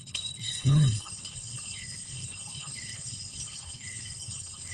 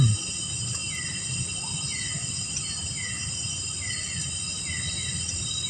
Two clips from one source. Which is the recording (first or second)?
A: second